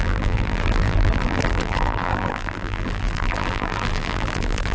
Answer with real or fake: fake